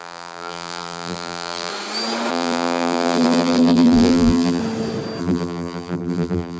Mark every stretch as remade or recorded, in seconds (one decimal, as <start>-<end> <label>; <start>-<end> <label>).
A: 0.0-1.7 remade; 1.7-2.3 recorded; 2.3-4.6 remade; 4.6-5.2 recorded; 5.2-6.6 remade